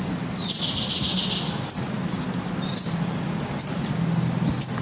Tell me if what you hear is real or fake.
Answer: real